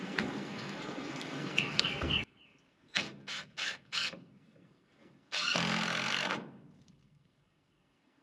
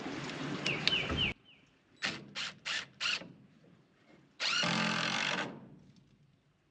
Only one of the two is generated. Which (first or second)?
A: first